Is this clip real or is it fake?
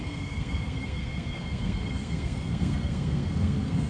fake